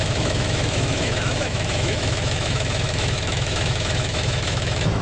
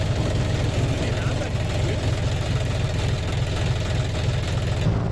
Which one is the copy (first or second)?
first